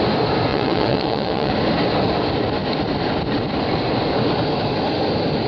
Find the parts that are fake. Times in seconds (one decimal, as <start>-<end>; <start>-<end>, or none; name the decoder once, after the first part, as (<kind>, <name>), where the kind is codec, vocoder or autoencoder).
0.5-1.5 (vocoder, WaveNeXt)